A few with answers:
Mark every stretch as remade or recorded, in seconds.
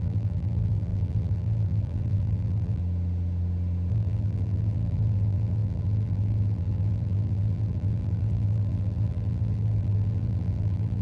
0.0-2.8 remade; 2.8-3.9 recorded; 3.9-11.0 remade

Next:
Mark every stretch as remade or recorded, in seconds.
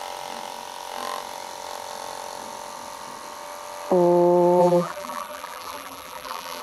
0.0-4.6 recorded; 4.6-6.6 remade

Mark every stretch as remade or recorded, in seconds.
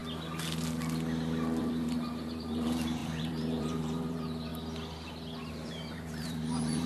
0.0-1.6 recorded; 1.6-4.5 remade; 4.5-5.5 recorded; 5.5-6.9 remade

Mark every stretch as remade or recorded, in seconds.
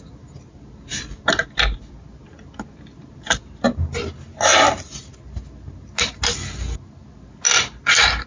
0.0-8.3 recorded